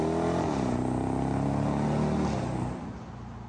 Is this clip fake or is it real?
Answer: real